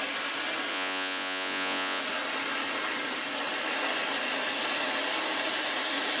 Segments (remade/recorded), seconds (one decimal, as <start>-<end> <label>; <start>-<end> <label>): 0.0-0.7 recorded; 0.7-2.0 remade; 2.0-6.2 recorded